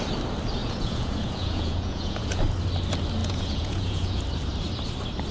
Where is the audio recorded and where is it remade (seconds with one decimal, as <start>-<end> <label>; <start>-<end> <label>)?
0.0-0.6 recorded; 0.6-2.4 remade; 2.4-3.2 recorded; 3.2-4.2 remade; 4.2-5.3 recorded